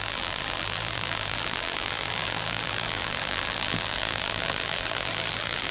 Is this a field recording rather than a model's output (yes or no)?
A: no